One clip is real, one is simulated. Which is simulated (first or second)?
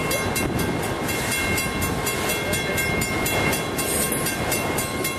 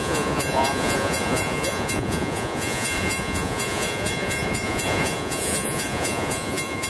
second